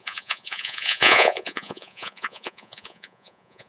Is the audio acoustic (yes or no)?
no